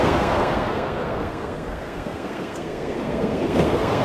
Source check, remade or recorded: remade